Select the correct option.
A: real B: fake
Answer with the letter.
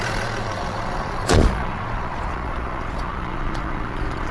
B